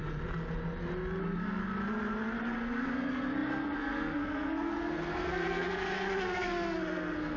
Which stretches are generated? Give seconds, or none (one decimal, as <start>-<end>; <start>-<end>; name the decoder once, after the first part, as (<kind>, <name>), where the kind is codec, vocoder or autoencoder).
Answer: 1.2-1.6 (codec, SNAC); 2.4-7.4